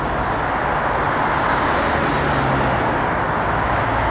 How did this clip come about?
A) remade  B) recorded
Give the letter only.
B